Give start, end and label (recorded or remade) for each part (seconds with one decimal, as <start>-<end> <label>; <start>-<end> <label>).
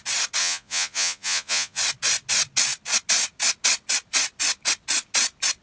0.0-0.4 recorded; 0.4-1.8 remade; 1.8-5.6 recorded